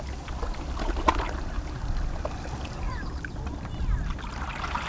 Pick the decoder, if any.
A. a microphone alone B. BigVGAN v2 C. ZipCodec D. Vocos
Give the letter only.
A